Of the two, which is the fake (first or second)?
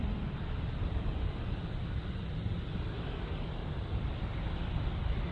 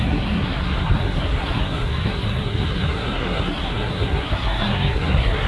second